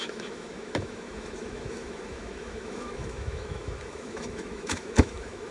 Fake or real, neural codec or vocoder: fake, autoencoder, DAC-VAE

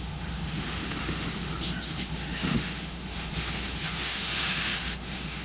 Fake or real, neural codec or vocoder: fake, autoencoder, DAC-VAE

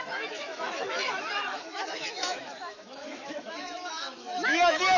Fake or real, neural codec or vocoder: fake, autoencoder, DAC-VAE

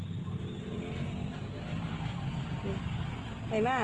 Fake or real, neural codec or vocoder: real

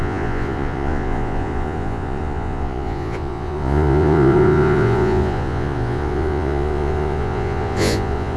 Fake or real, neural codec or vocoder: fake, vocoder, Vocos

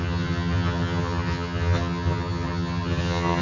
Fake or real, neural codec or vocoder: fake, vocoder, HiFi-GAN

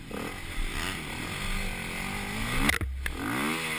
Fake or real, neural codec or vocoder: real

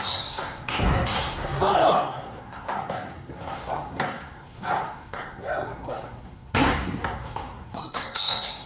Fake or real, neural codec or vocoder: fake, codec, SNAC